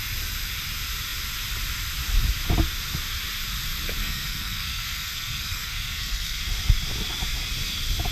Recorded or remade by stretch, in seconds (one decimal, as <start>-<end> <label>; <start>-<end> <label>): 0.0-4.0 recorded; 4.0-6.4 remade; 6.4-8.1 recorded